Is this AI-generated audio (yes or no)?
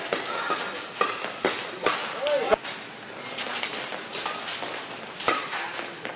no